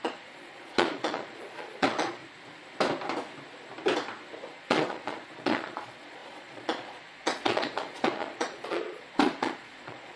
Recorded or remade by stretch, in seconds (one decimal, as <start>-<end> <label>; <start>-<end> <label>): 0.0-2.2 remade; 2.2-4.5 recorded; 4.5-10.2 remade